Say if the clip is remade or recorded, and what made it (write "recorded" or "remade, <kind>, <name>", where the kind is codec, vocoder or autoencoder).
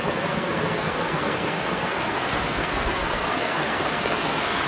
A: remade, codec, SNAC